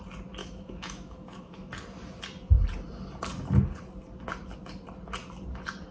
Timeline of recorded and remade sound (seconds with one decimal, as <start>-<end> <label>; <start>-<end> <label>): 0.0-0.4 recorded; 0.4-1.7 remade; 1.7-5.9 recorded